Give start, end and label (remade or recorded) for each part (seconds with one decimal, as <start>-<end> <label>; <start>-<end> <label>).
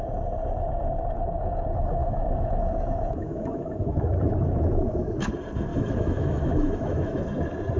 0.0-2.0 recorded; 2.0-5.3 remade; 5.3-5.7 recorded; 5.7-7.2 remade; 7.2-7.8 recorded